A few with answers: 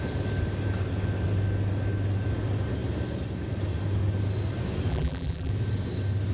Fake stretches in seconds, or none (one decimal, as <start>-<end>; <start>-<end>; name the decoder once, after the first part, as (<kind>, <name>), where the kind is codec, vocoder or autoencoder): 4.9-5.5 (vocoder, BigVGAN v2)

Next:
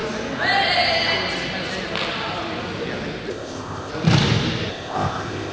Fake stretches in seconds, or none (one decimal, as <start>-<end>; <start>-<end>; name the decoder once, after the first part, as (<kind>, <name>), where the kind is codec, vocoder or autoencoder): 3.3-3.9 (codec, ZipCodec); 4.7-5.5

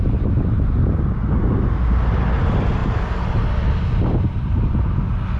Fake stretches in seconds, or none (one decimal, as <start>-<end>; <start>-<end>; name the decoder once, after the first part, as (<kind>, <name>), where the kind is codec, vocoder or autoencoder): none

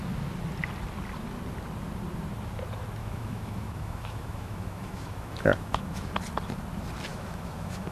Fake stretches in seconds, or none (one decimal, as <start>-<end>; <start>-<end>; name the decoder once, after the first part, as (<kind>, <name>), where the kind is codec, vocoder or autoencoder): 3.0-6.1 (autoencoder, DAC-VAE); 7.1-7.9

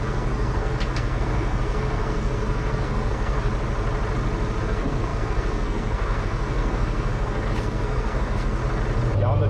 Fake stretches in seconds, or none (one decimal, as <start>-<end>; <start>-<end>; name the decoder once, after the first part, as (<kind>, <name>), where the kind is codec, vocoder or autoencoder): 0.0-3.5 (codec, SNAC); 4.6-8.6

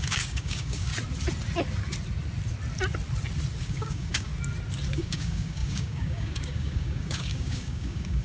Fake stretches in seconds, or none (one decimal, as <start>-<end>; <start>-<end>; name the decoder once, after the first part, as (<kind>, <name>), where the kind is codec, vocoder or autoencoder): 0.0-0.9 (codec, DAC); 3.6-4.3; 4.9-8.2

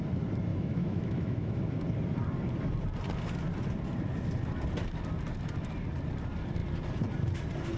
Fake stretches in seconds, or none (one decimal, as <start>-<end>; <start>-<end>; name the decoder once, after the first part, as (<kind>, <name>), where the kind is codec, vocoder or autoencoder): 0.5-1.7 (autoencoder, DAC-VAE)

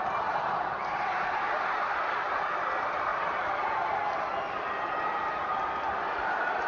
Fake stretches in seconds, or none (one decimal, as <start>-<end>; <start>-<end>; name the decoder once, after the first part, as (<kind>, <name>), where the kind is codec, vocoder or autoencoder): none